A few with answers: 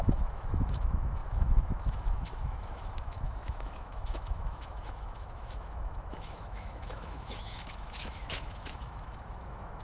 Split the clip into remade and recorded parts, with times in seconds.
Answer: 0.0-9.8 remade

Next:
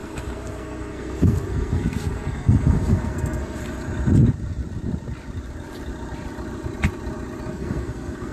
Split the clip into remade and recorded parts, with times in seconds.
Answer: 0.0-3.6 remade; 3.6-7.5 recorded; 7.5-8.3 remade